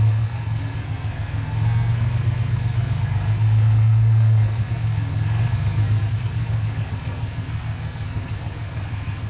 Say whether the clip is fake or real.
fake